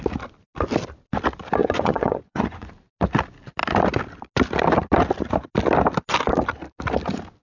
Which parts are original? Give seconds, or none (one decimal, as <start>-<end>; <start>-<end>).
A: 0.0-1.6; 2.7-7.4